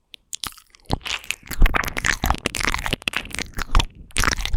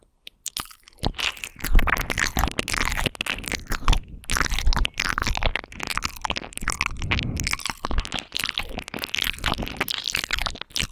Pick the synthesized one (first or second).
first